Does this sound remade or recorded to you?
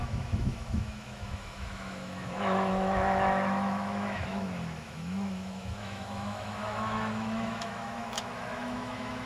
remade